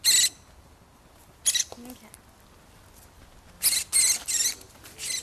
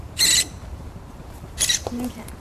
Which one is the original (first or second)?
first